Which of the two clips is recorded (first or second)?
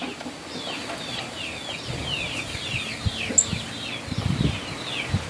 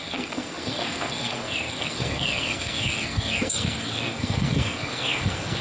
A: first